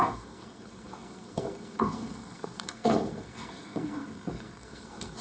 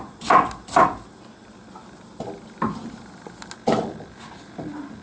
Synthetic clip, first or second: first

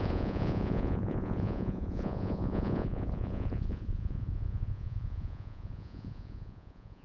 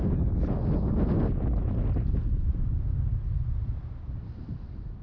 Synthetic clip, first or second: first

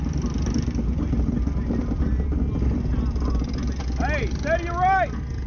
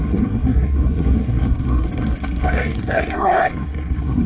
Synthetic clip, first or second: second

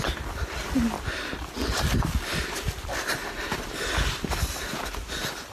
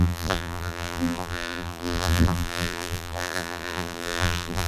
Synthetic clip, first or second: second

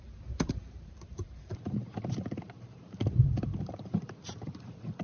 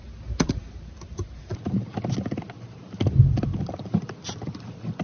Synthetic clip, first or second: first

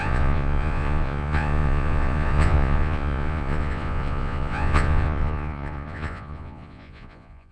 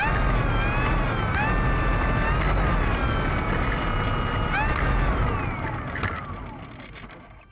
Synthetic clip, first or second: first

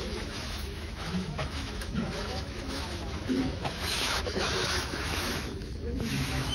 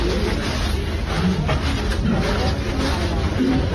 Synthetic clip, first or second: first